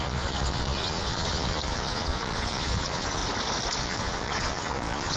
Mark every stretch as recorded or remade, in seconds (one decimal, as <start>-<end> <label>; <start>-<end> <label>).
0.0-3.2 remade; 3.2-3.8 recorded; 3.8-5.2 remade